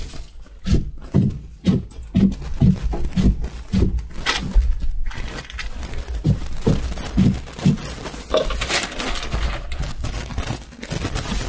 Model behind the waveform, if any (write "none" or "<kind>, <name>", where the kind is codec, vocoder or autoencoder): none